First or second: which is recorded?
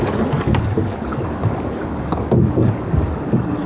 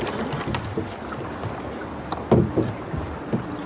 second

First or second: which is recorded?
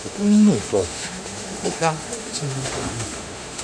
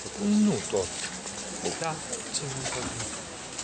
second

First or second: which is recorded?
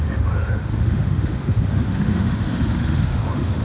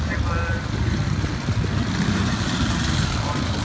second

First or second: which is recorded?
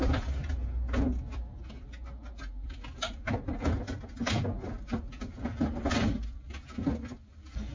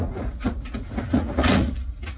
first